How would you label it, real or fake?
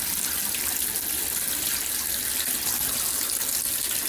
real